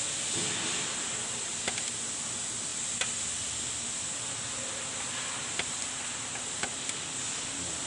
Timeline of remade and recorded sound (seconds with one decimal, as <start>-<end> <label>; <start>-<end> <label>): 0.0-7.9 recorded